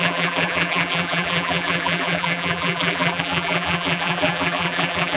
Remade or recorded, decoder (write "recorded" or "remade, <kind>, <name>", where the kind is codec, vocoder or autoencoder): remade, vocoder, BigVGAN v2